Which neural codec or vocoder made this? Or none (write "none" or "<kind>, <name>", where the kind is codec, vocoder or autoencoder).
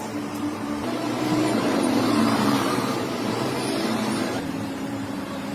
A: vocoder, BigVGAN v2